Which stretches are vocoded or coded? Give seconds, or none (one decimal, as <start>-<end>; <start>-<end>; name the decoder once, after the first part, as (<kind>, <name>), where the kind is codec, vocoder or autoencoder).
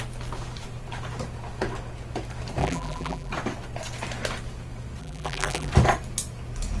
2.6-3.3 (vocoder, BigVGAN v2); 5.0-5.7